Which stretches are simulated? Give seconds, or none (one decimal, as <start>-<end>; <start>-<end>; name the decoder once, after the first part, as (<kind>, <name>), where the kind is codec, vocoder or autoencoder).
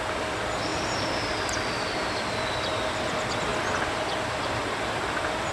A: 3.5-4.6 (vocoder, BigVGAN v2)